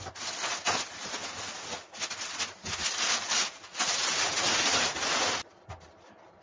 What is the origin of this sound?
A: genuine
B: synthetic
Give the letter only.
A